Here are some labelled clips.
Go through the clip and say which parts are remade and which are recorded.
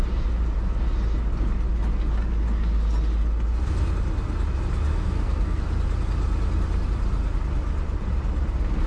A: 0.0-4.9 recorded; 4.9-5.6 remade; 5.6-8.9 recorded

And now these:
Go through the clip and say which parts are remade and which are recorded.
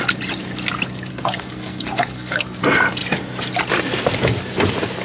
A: 0.0-1.1 recorded; 1.1-2.6 remade; 2.6-5.0 recorded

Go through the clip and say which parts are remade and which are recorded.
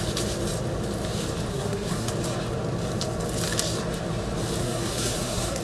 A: 0.0-1.5 recorded; 1.5-2.1 remade; 2.1-4.6 recorded; 4.6-5.6 remade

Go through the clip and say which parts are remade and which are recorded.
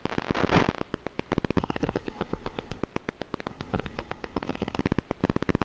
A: 0.0-1.6 recorded; 1.6-2.8 remade; 2.8-3.5 recorded; 3.5-4.8 remade; 4.8-5.6 recorded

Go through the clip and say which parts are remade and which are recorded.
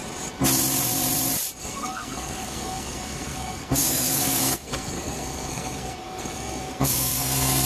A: 0.0-1.6 recorded; 1.6-7.7 remade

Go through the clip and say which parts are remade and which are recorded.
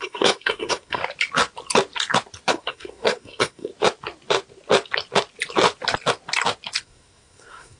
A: 0.0-1.0 remade; 1.0-2.5 recorded; 2.5-3.7 remade; 3.7-6.8 recorded; 6.8-7.8 remade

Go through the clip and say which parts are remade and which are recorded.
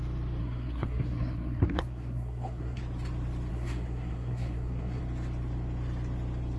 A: 0.0-0.4 recorded; 0.4-2.8 remade; 2.8-3.5 recorded; 3.5-5.0 remade; 5.0-6.6 recorded